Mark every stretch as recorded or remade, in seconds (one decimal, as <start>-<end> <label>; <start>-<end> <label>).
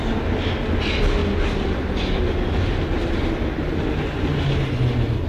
0.0-5.3 recorded